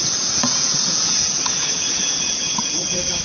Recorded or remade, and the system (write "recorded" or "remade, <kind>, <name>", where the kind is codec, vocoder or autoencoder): remade, vocoder, Vocos